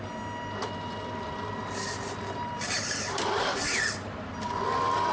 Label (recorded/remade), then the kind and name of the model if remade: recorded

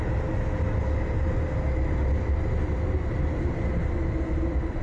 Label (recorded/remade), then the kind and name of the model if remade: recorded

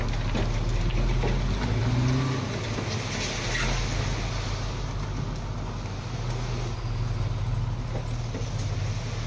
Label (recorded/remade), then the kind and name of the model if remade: recorded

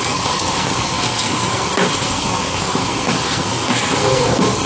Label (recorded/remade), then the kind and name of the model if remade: remade, codec, SNAC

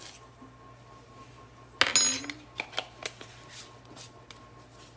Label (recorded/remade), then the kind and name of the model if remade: recorded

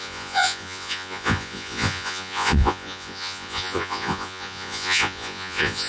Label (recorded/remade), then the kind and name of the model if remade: remade, vocoder, Vocos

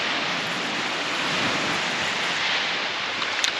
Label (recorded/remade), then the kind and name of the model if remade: recorded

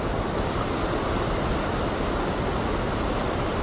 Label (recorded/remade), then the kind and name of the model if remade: recorded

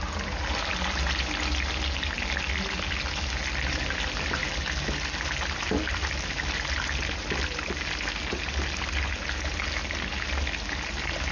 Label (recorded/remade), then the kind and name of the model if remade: recorded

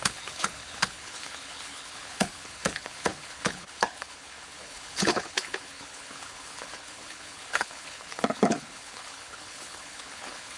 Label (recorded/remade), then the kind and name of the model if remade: remade, codec, HILCodec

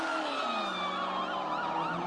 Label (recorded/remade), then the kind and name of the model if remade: recorded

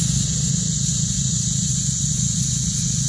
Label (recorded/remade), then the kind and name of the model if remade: remade, vocoder, Vocos